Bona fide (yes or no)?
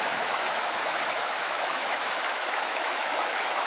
no